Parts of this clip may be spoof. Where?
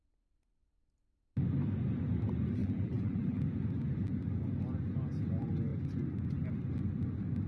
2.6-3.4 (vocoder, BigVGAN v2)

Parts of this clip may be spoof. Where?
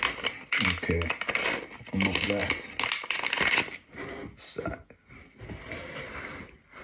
none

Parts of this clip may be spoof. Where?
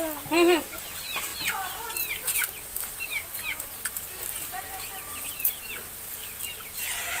none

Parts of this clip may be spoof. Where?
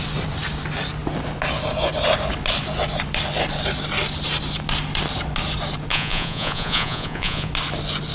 5.9-7.5 (vocoder, Vocos)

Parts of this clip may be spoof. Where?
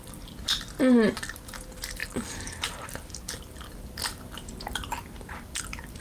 2.0-5.6 (vocoder, BigVGAN v2)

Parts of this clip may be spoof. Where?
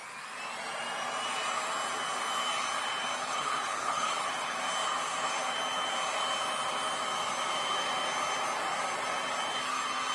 3.2-4.6 (codec, HILCodec)